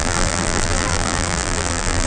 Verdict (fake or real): fake